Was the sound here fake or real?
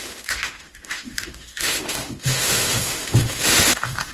fake